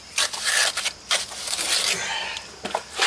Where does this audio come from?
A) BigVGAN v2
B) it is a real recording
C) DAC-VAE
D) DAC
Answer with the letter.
A